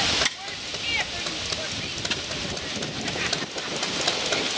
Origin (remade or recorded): recorded